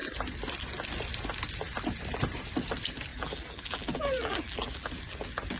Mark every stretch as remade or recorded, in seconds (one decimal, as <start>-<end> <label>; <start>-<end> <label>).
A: 0.0-3.1 recorded; 3.1-4.9 remade; 4.9-5.6 recorded